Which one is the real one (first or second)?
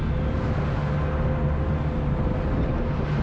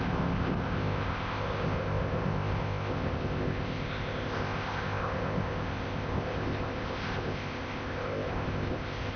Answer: first